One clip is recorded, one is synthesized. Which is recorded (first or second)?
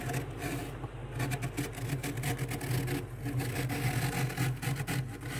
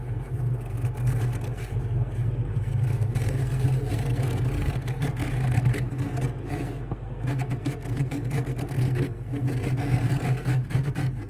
first